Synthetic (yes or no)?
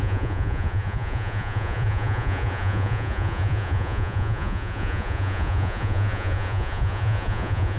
yes